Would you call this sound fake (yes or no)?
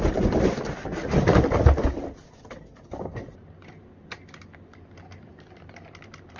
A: no